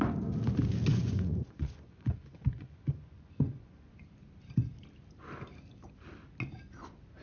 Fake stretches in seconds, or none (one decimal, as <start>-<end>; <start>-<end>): 0.9-4.0